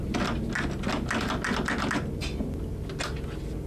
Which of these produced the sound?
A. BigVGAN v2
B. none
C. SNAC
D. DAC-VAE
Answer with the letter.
B